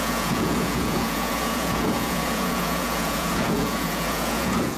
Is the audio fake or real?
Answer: fake